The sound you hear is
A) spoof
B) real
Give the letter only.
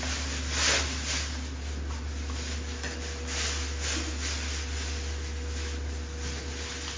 B